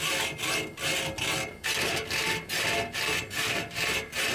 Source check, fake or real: real